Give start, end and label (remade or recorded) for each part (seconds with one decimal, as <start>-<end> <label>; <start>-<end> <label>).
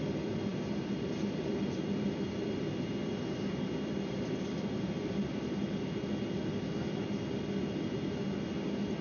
0.0-9.0 recorded